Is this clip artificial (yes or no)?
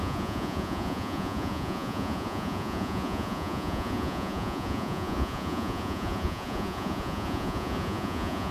yes